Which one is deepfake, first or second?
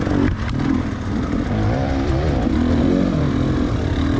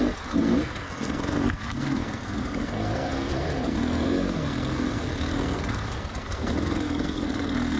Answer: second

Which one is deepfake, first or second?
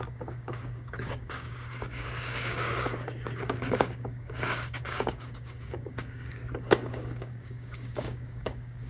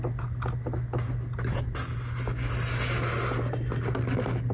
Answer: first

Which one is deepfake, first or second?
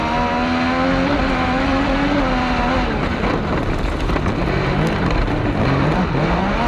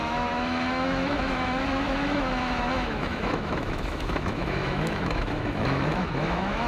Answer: second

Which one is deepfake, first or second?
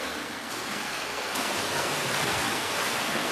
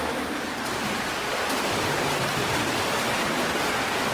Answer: first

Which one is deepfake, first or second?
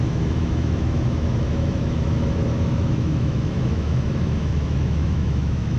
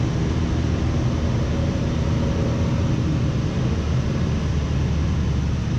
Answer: first